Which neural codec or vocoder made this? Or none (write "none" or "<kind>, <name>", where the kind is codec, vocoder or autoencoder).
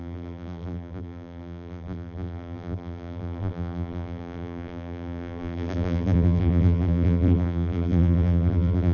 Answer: vocoder, BigVGAN v2